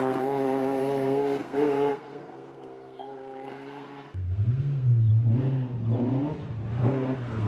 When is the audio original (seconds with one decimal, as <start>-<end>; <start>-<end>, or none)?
5.1-6.8